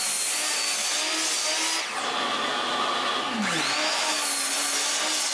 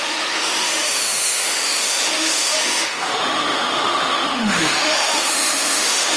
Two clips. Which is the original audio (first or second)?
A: first